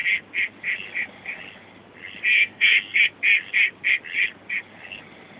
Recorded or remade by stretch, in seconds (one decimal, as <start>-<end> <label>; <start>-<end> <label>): 0.0-2.4 recorded; 2.4-3.0 remade; 3.0-5.4 recorded